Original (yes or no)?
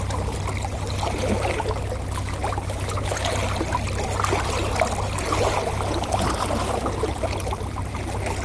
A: yes